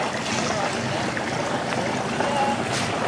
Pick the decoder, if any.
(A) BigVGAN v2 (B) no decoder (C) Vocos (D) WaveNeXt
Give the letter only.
B